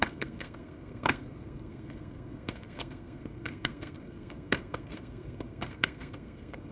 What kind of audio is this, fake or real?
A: fake